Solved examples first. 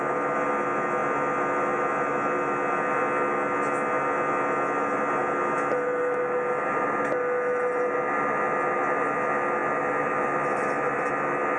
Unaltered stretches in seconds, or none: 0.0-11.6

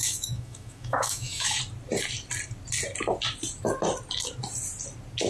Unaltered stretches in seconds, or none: 1.6-5.3

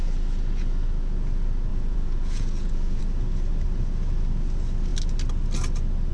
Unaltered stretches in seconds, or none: 0.0-1.7; 3.0-6.1

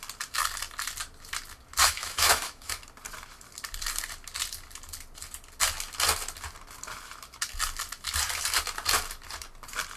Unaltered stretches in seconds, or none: 0.0-1.8; 2.8-10.0

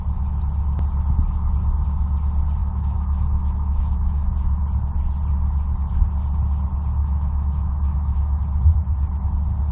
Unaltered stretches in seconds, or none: 0.0-2.6; 4.3-7.0; 8.4-9.7

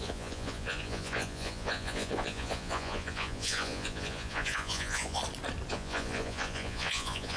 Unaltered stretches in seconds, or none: 5.2-5.7